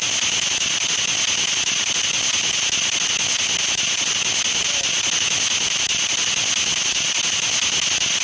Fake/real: real